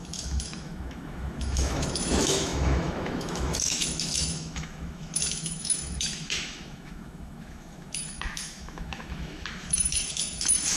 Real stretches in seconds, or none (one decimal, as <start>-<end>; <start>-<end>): none